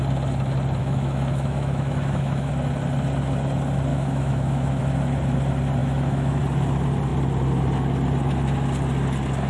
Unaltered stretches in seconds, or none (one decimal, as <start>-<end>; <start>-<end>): 0.0-0.8; 2.5-3.9; 4.8-5.8; 6.4-9.5